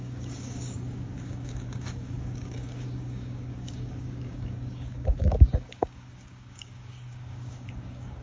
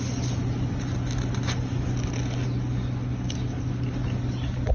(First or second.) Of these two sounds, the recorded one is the second